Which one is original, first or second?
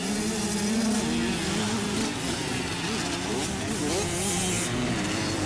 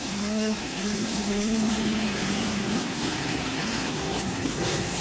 first